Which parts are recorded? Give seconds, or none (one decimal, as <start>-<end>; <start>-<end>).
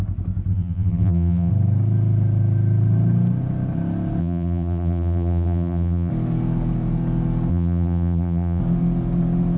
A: 0.0-0.5; 1.5-4.2; 6.1-7.5; 8.6-9.6